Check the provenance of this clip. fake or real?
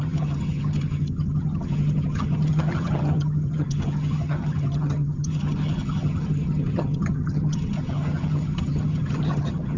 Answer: fake